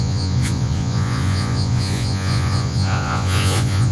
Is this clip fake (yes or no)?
yes